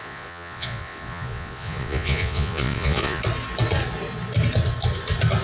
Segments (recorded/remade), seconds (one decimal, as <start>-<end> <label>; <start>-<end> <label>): 0.0-3.2 remade; 3.2-5.4 recorded